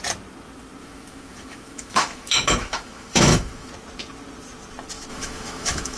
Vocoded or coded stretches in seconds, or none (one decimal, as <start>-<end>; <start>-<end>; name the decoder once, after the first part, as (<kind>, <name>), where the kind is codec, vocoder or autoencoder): 0.8-3.7 (autoencoder, DAC-VAE); 5.1-6.0